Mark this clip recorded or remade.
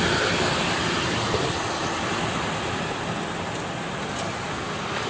recorded